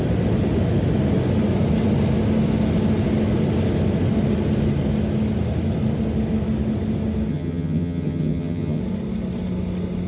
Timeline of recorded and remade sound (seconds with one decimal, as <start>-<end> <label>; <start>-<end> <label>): 0.0-7.3 recorded; 7.3-8.8 remade; 8.8-10.1 recorded